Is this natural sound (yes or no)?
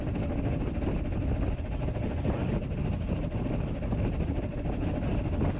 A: yes